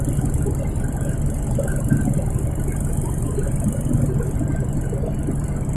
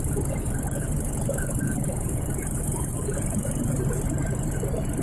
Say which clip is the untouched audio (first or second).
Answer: first